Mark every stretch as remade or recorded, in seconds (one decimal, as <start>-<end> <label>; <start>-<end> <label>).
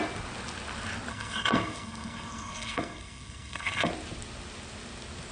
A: 0.0-1.1 recorded; 1.1-3.9 remade; 3.9-5.3 recorded